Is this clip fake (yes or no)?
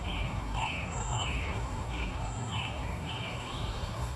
yes